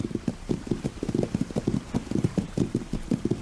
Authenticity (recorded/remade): remade